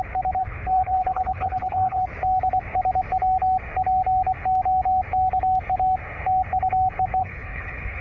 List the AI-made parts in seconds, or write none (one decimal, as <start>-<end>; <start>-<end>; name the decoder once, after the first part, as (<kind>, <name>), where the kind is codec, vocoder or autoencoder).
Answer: 0.4-2.0 (codec, HILCodec); 7.2-8.0